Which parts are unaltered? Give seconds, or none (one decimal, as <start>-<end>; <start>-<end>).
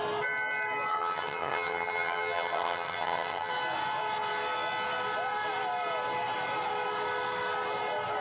0.0-0.9; 3.5-8.2